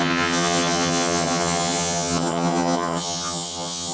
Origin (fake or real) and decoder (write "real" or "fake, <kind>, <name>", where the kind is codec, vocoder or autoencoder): fake, vocoder, HiFi-GAN